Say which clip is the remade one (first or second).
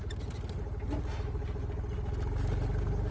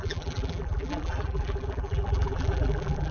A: second